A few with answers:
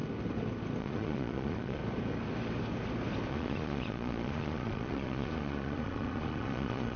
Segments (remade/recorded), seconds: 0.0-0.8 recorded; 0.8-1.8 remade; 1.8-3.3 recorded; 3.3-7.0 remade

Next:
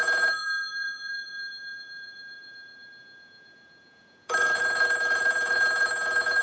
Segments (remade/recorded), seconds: 0.0-6.4 remade

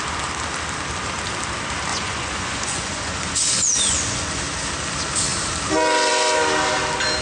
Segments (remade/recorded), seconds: 0.0-1.9 recorded; 1.9-4.4 remade; 4.4-7.2 recorded

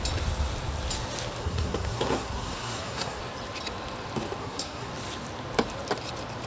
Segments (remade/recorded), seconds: 0.0-1.4 recorded; 1.4-3.2 remade; 3.2-4.4 recorded; 4.4-4.9 remade; 4.9-6.5 recorded

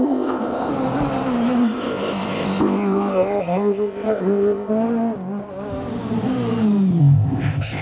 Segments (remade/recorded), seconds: 0.0-0.7 remade; 0.7-1.6 recorded; 1.6-4.7 remade; 4.7-7.0 recorded; 7.0-7.8 remade

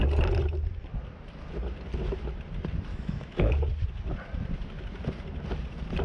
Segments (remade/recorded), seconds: 0.0-2.9 recorded; 2.9-3.5 remade; 3.5-6.0 recorded

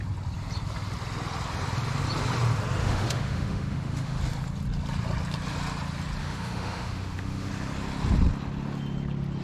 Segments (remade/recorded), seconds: 0.0-2.8 recorded; 2.8-4.2 remade; 4.2-6.2 recorded; 6.2-7.5 remade; 7.5-9.4 recorded

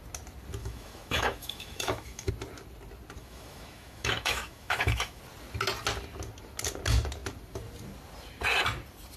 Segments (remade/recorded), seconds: 0.0-0.6 recorded; 0.6-2.3 remade; 2.3-3.2 recorded; 3.2-5.2 remade; 5.2-9.2 recorded